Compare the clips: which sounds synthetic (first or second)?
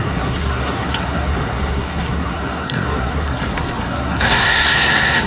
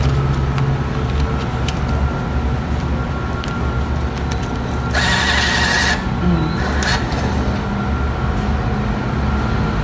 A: first